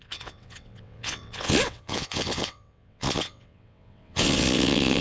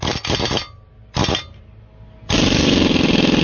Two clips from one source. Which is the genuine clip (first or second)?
second